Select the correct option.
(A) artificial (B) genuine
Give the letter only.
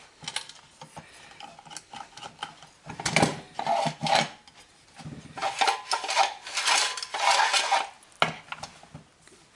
B